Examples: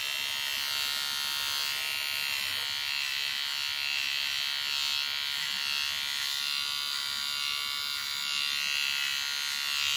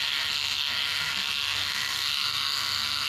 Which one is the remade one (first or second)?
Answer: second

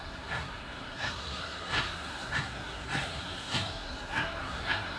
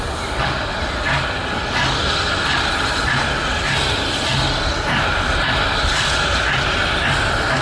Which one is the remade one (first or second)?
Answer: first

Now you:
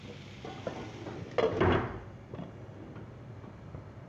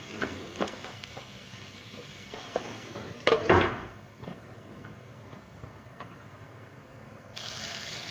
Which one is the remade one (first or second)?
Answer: second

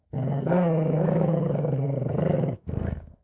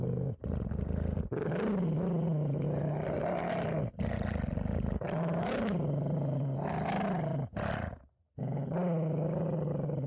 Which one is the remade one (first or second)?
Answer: first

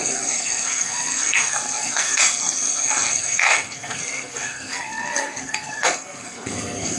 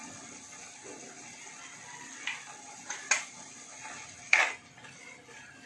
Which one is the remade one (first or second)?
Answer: first